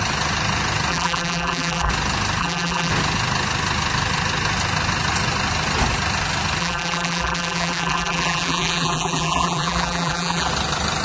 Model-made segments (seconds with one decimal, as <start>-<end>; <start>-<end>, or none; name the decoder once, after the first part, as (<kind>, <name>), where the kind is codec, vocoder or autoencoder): 0.9-1.9 (vocoder, BigVGAN v2); 2.4-2.9; 6.6-10.5